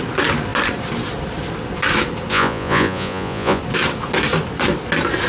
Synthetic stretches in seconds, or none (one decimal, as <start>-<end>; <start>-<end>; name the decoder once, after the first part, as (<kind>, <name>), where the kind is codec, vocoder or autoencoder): 2.3-3.6 (vocoder, Vocos)